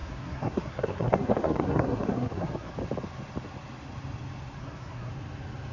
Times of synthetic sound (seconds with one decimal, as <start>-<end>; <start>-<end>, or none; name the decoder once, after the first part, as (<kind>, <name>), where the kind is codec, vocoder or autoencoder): 0.0-2.7 (codec, SNAC); 4.6-5.1